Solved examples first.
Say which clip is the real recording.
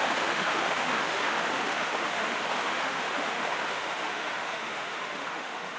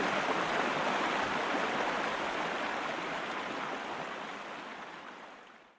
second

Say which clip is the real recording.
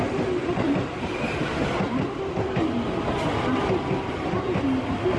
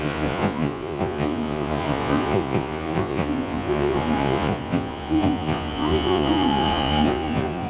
first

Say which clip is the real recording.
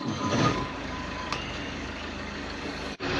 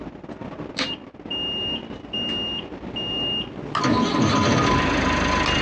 second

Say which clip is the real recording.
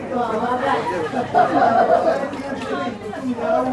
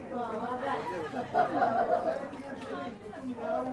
second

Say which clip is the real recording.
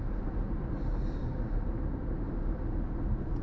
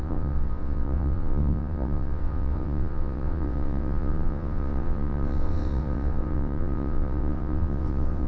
first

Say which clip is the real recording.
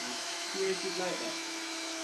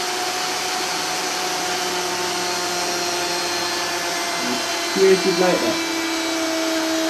second